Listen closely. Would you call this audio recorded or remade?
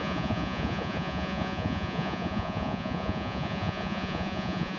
remade